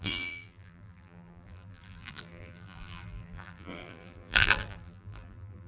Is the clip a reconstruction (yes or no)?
yes